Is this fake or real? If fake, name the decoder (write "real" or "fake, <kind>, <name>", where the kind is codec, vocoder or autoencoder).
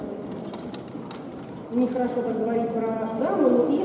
real